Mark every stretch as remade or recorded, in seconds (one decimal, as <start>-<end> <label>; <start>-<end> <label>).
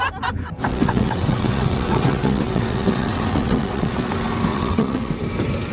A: 0.0-0.7 recorded; 0.7-4.1 remade; 4.1-4.5 recorded; 4.5-5.1 remade; 5.1-5.7 recorded